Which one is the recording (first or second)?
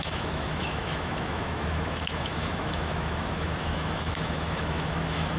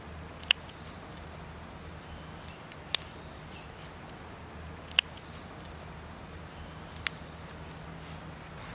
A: second